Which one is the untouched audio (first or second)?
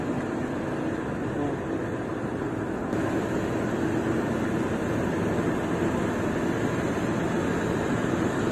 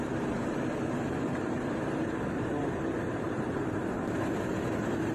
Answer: first